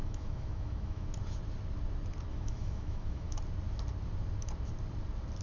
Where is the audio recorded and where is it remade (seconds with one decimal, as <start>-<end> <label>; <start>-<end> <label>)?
0.0-1.1 remade; 1.1-2.3 recorded; 2.3-3.4 remade; 3.4-5.4 recorded